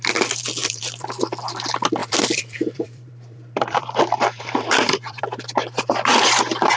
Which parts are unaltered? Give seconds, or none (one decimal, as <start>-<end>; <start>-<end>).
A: 0.0-0.6; 1.2-2.0; 5.2-6.8

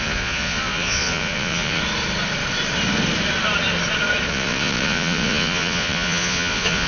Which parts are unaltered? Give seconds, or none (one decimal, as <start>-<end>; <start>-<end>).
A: 1.8-4.3

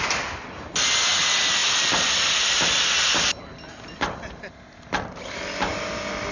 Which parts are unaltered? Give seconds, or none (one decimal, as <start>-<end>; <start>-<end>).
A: 0.0-1.6; 5.4-6.3

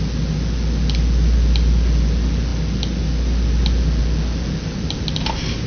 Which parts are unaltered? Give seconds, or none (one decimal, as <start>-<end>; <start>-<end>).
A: 0.0-5.7

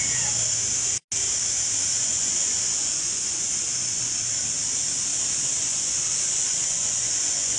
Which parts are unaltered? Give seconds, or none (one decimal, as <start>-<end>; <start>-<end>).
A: 0.0-1.9; 4.3-5.6

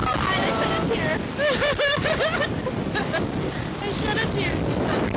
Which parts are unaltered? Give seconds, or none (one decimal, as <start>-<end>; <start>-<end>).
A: 0.0-5.2